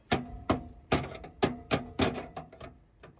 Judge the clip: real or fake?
real